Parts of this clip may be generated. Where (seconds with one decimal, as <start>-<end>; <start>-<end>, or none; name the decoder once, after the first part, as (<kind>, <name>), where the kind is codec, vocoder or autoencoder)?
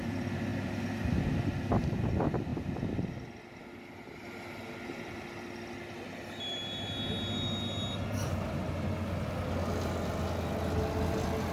0.5-1.2 (vocoder, BigVGAN v2)